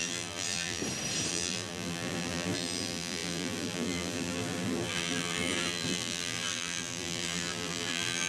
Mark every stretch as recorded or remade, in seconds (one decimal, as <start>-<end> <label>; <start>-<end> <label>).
0.0-0.8 remade; 0.8-1.3 recorded; 1.3-8.3 remade